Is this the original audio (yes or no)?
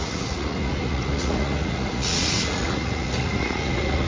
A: no